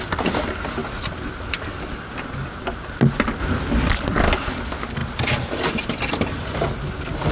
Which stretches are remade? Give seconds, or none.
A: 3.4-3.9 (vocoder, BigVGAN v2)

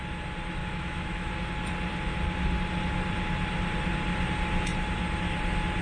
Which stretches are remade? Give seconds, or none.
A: 0.6-1.3 (autoencoder, DAC-VAE)